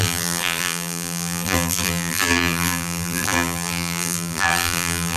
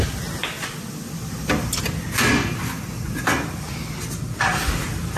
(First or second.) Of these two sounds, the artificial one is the first